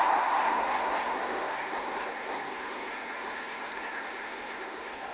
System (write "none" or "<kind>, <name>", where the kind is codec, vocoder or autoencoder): codec, SNAC